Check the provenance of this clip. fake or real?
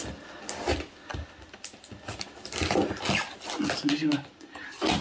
real